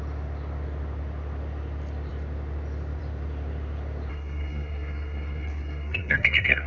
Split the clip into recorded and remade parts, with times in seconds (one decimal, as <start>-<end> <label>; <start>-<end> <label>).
0.0-4.1 recorded; 4.1-6.7 remade